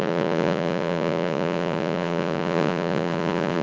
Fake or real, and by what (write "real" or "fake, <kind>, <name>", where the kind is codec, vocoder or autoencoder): fake, vocoder, Vocos